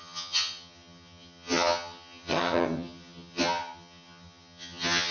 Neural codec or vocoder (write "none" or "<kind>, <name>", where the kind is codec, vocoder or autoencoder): vocoder, HiFi-GAN